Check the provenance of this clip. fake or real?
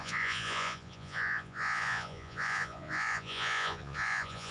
fake